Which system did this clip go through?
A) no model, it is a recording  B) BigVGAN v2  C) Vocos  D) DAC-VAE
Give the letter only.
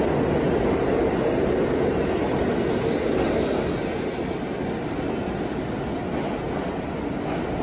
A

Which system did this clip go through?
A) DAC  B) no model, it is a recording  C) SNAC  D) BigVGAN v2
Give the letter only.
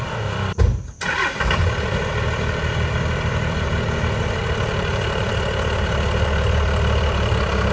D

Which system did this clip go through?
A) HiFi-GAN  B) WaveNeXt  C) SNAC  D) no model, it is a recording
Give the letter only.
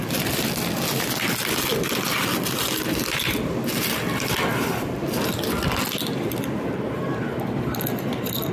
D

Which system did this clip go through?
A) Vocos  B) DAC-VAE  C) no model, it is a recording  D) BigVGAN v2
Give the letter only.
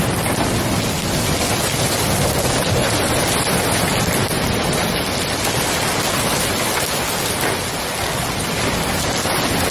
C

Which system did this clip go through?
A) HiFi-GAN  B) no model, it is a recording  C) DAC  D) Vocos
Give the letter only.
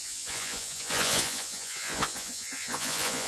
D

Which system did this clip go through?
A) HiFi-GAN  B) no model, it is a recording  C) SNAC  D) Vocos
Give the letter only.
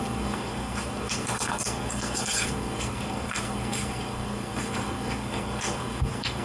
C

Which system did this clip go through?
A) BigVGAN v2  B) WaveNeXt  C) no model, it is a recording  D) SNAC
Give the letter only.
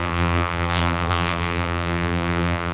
A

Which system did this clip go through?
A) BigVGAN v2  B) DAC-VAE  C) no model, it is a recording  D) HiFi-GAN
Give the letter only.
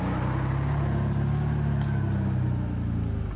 C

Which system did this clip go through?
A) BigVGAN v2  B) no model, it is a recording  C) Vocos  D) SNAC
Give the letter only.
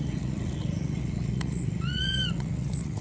C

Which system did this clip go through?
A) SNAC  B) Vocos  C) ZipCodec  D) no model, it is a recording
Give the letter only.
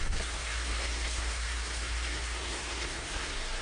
A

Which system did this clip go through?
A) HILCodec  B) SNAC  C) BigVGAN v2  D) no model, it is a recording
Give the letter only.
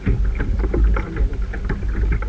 D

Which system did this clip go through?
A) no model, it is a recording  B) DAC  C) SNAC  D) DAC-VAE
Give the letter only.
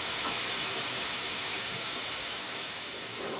D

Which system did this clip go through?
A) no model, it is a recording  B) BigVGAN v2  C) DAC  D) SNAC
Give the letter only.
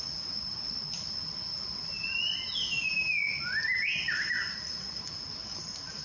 A